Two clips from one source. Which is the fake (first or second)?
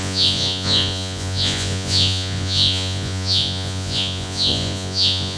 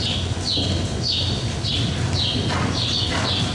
first